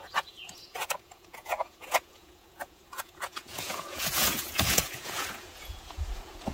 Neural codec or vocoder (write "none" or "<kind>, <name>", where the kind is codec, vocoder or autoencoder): vocoder, Vocos